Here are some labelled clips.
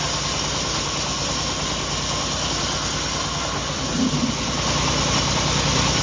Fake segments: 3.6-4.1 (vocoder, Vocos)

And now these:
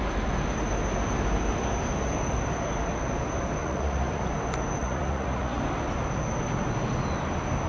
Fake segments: 3.6-4.2 (vocoder, Vocos); 4.8-5.6

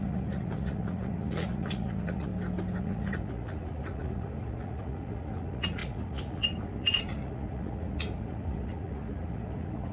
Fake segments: 0.0-2.3 (vocoder, Vocos); 2.8-9.9

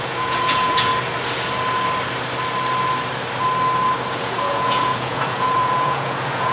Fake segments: 0.0-0.9 (vocoder, Vocos); 4.1-6.5